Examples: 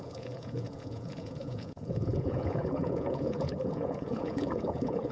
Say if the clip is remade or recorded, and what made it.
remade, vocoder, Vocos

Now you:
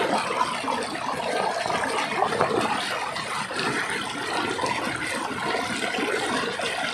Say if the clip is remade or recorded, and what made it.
recorded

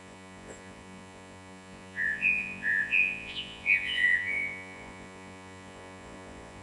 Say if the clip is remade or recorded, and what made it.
remade, vocoder, Vocos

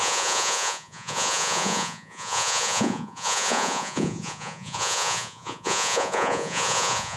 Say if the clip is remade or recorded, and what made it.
remade, vocoder, Vocos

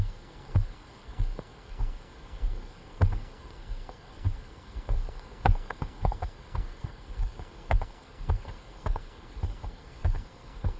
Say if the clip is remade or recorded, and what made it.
remade, codec, SNAC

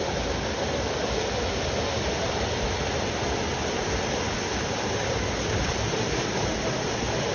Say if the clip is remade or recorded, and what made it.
recorded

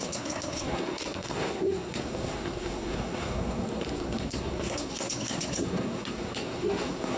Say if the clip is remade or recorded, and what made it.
remade, codec, SNAC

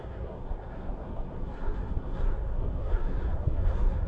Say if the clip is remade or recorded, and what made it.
remade, codec, SNAC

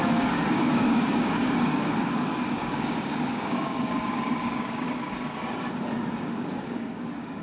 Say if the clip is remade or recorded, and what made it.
remade, codec, DAC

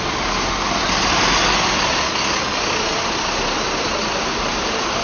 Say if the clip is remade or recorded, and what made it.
recorded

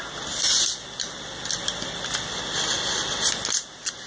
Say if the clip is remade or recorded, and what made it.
recorded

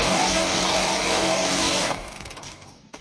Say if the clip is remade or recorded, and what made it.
remade, codec, DAC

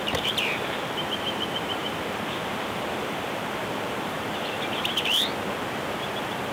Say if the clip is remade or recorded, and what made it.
remade, vocoder, BigVGAN v2